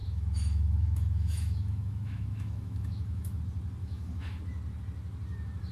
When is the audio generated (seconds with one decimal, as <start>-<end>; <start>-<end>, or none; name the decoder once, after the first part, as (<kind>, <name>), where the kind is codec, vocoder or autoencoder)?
0.0-3.4 (autoencoder, DAC-VAE); 3.8-4.4